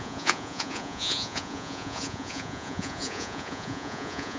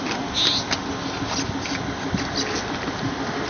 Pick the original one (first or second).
second